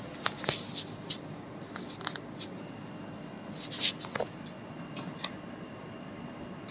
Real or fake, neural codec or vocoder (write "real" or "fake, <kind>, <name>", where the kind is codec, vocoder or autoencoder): real